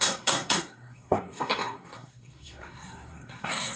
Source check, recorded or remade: remade